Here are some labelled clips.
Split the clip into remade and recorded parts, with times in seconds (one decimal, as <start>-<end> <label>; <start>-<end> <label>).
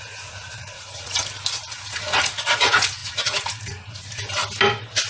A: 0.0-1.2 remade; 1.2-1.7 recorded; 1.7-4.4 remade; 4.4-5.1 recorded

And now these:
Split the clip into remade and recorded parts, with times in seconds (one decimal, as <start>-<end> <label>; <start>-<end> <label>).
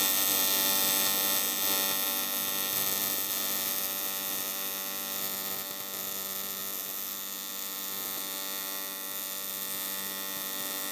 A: 0.0-10.9 recorded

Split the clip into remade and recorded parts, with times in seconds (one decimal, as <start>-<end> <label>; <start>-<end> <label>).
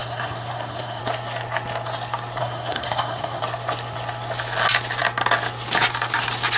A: 0.0-1.0 remade; 1.0-2.4 recorded; 2.4-3.4 remade; 3.4-6.6 recorded